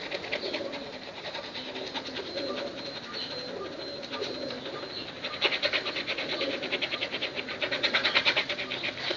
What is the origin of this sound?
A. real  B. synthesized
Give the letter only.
A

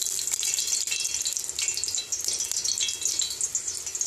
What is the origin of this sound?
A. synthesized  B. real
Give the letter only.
B